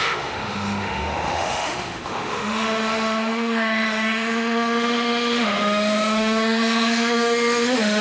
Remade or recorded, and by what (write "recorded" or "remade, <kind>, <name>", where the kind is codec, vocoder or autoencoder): remade, autoencoder, DAC-VAE